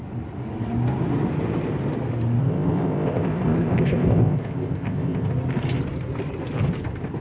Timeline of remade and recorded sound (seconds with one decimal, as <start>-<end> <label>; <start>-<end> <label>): 0.0-2.4 recorded; 2.4-5.3 remade; 5.3-7.2 recorded